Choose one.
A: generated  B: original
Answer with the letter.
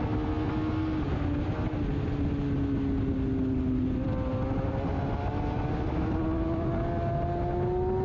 B